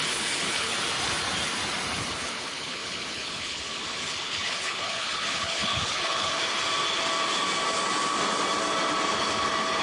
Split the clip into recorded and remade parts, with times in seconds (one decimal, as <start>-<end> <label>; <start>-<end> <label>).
0.0-0.7 remade; 0.7-2.1 recorded; 2.1-6.4 remade; 6.4-9.8 recorded